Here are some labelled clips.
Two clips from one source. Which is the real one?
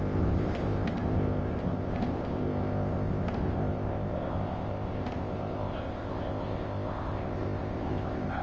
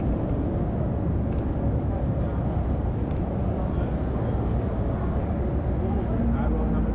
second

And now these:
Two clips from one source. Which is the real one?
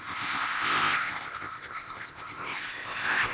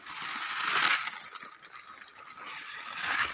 second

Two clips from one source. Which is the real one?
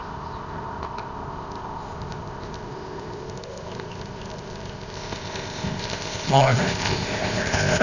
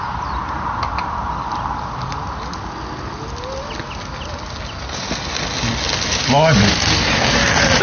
second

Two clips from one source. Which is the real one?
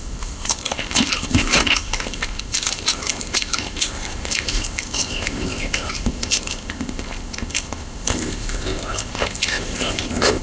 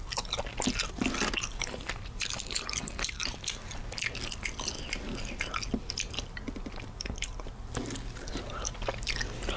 second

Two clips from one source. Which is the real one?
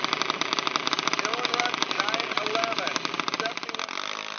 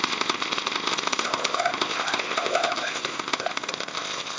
first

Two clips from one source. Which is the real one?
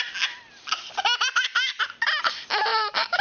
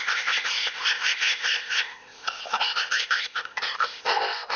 first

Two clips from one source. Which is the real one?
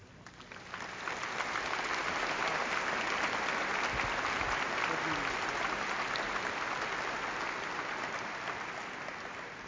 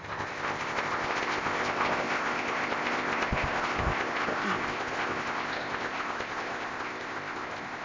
first